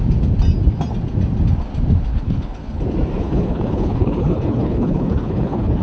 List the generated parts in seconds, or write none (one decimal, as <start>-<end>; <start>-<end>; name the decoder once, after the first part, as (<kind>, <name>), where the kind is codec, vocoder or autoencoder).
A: 2.1-2.8 (codec, HILCodec); 3.2-5.8